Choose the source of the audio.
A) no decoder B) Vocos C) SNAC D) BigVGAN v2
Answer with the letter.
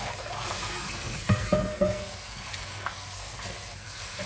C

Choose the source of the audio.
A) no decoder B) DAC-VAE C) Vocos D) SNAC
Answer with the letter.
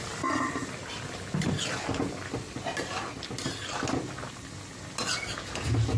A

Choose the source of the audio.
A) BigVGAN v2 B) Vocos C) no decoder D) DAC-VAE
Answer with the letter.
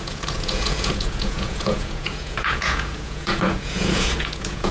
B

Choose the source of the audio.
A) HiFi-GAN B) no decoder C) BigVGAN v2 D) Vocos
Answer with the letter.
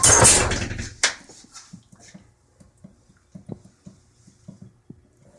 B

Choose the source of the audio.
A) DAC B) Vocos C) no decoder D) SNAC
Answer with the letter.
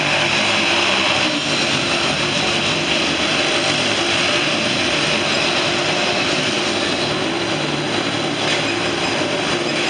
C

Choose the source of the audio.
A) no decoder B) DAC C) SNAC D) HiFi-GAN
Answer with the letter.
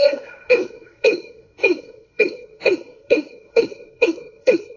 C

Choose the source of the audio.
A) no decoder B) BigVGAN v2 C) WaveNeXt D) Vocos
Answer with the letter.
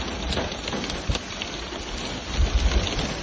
A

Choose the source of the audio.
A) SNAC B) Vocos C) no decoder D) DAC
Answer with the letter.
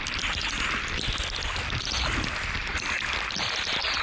C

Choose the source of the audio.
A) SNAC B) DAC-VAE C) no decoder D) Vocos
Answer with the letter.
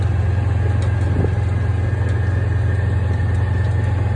C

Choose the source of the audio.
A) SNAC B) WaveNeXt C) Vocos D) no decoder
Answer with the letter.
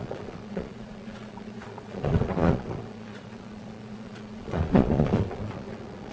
C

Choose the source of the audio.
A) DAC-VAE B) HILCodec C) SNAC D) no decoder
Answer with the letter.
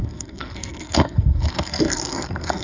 C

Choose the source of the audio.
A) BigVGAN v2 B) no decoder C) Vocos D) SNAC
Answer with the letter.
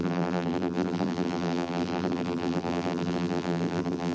A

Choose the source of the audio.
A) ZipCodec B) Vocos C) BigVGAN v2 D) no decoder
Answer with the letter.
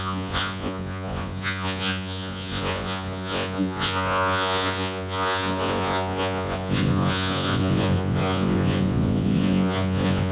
B